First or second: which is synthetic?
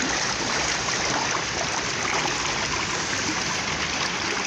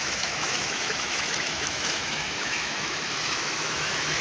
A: second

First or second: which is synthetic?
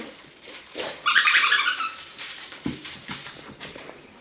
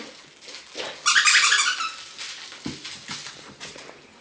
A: first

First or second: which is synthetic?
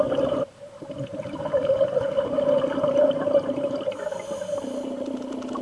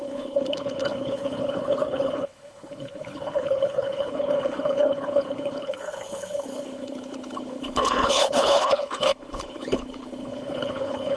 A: second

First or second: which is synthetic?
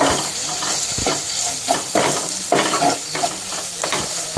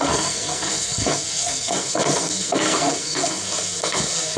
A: second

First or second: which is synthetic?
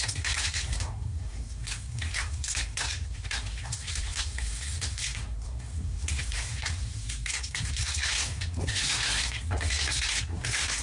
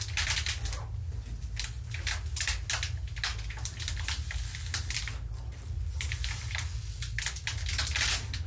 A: first